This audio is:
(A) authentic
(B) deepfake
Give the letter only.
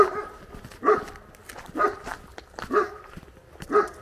A